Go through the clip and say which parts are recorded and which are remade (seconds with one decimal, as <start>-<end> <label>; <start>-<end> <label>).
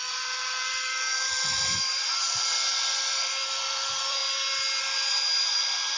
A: 0.0-4.2 remade; 4.2-4.8 recorded; 4.8-6.0 remade